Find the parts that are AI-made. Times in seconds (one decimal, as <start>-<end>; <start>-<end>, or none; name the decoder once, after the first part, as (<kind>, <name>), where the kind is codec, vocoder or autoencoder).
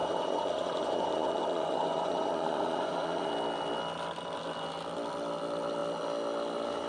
0.0-3.3 (vocoder, Vocos)